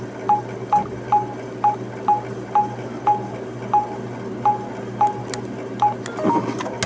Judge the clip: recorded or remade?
recorded